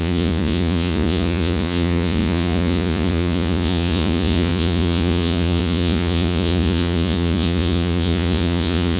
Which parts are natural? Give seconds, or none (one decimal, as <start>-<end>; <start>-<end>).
none